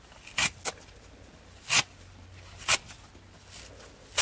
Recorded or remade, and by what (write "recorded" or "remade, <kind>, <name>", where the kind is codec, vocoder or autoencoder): recorded